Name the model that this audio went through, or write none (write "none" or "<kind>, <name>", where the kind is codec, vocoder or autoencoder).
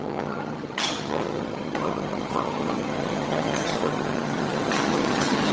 vocoder, HiFi-GAN